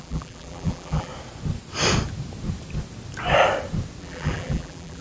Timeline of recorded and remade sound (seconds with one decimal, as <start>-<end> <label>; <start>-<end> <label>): 0.0-1.1 remade; 1.1-4.0 recorded; 4.0-5.0 remade